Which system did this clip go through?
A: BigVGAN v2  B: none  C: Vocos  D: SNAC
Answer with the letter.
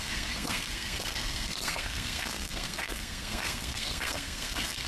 D